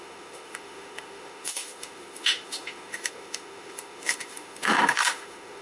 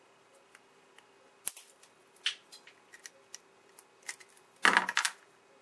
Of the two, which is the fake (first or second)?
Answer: first